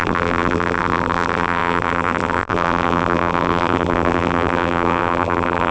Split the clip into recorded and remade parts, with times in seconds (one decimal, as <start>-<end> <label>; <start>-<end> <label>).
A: 0.0-5.7 remade

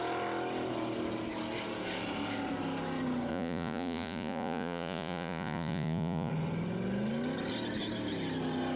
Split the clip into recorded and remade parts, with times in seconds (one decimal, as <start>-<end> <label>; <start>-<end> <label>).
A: 0.0-3.3 recorded; 3.3-6.3 remade; 6.3-8.8 recorded